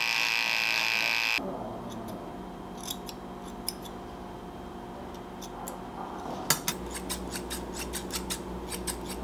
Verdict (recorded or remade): recorded